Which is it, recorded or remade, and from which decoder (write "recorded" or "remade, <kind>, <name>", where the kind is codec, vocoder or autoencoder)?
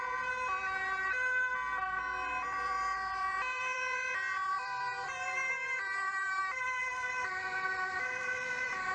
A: remade, vocoder, BigVGAN v2